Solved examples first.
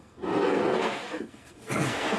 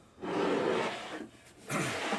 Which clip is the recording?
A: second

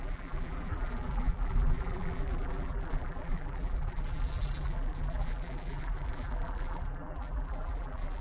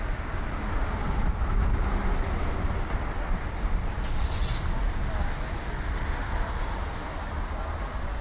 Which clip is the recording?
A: second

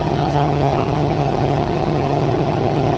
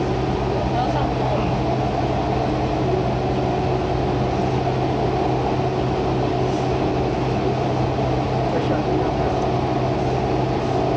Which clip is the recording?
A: second